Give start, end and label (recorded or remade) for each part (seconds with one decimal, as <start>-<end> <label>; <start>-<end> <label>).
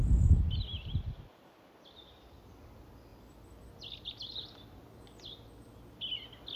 0.0-6.6 recorded